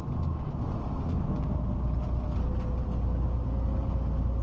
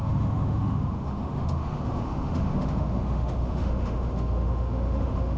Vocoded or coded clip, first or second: second